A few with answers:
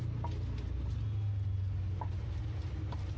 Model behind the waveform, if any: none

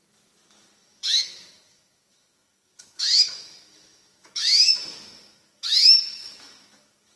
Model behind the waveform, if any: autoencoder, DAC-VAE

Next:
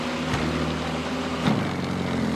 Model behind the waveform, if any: none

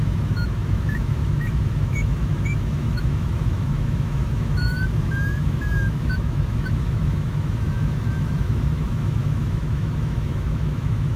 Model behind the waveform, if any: autoencoder, DAC-VAE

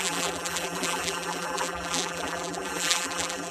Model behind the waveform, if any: vocoder, BigVGAN v2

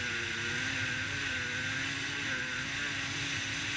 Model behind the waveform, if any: none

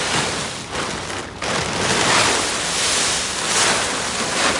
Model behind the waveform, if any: none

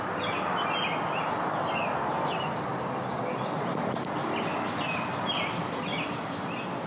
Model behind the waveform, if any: none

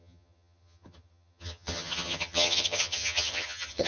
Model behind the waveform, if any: vocoder, HiFi-GAN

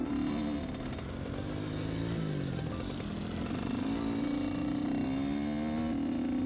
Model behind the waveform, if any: none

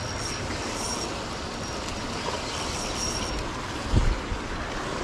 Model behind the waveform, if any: none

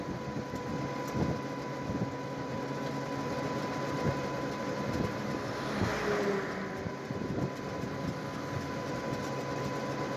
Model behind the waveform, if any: none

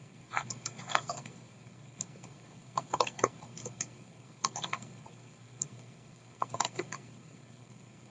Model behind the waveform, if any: codec, SNAC